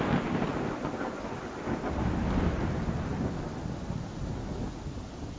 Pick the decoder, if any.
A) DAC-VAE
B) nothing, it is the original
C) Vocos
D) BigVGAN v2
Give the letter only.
B